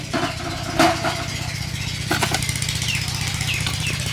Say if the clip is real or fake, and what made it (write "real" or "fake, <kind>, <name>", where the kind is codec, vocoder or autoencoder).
real